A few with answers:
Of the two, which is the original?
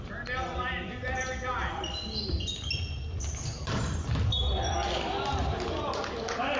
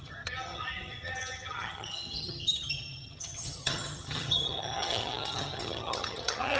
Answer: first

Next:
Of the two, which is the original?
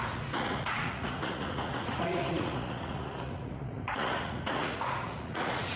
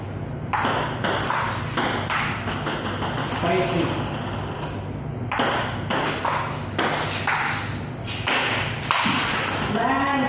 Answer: second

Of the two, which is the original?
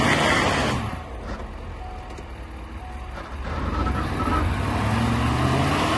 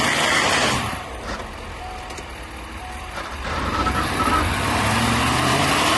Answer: first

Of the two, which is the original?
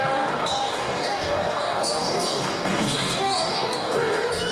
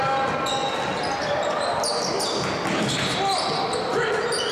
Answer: second